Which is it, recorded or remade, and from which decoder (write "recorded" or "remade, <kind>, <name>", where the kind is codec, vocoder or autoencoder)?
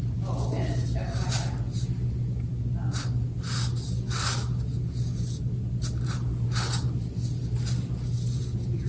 recorded